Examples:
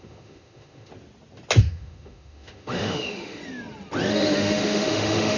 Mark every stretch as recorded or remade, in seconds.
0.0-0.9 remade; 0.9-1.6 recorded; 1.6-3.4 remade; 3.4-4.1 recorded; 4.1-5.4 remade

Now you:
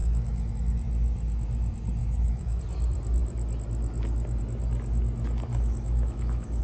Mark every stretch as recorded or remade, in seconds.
0.0-0.5 remade; 0.5-2.0 recorded; 2.0-2.6 remade; 2.6-5.5 recorded; 5.5-6.6 remade

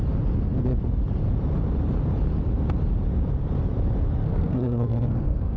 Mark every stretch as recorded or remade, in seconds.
0.0-4.2 recorded; 4.2-5.6 remade

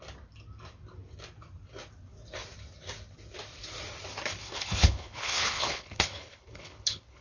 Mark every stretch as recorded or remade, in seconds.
0.0-4.4 recorded; 4.4-7.2 remade

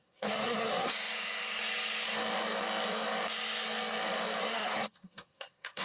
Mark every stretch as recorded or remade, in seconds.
0.0-0.9 remade; 0.9-4.4 recorded; 4.4-5.8 remade

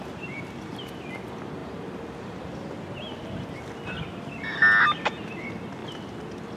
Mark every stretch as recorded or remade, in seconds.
0.0-1.6 recorded; 1.6-2.4 remade; 2.4-6.6 recorded

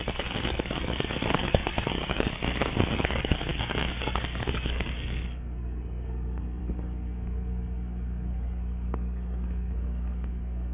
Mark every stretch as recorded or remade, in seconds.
0.0-10.7 remade

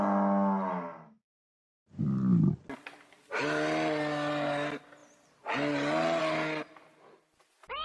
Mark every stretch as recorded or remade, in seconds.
0.0-7.8 recorded